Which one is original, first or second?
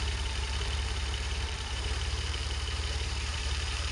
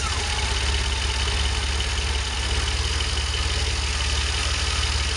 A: second